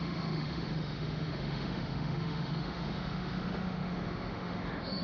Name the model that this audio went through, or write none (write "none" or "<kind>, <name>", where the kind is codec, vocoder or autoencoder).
autoencoder, DAC-VAE